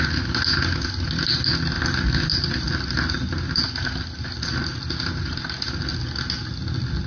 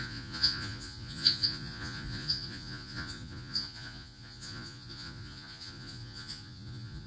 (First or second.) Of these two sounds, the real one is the first